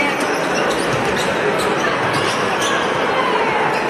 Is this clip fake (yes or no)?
no